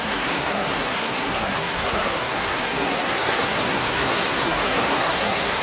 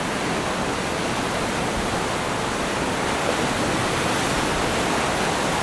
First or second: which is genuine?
second